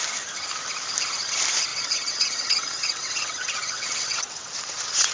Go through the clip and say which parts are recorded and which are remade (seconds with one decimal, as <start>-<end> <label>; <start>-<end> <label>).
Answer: 0.0-1.7 recorded; 1.7-5.1 remade